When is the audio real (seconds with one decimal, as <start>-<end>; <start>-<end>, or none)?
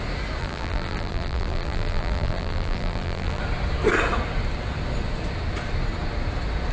0.0-0.4; 3.4-6.7